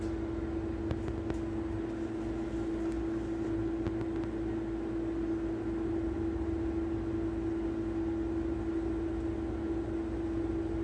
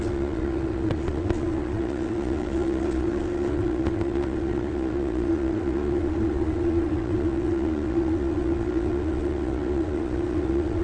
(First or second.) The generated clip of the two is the second